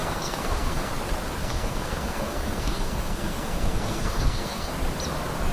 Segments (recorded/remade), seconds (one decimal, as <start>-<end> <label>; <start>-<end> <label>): 0.0-0.9 remade; 0.9-1.4 recorded; 1.4-4.7 remade; 4.7-5.5 recorded